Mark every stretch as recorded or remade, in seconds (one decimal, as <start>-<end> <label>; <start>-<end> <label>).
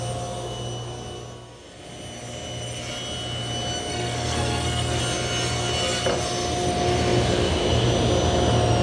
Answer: 0.0-3.9 recorded; 3.9-5.0 remade; 5.0-8.8 recorded